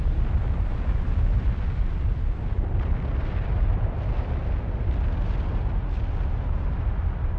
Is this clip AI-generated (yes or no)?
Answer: no